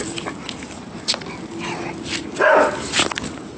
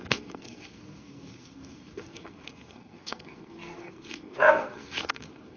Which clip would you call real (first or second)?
first